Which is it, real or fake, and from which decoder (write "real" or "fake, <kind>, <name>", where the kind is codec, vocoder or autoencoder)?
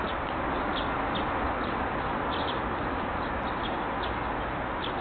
real